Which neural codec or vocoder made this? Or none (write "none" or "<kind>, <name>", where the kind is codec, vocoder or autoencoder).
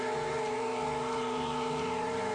vocoder, BigVGAN v2